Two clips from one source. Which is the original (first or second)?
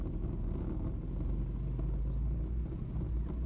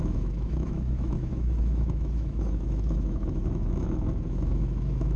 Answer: first